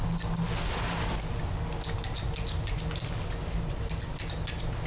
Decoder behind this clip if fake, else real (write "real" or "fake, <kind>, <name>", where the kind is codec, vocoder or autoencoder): real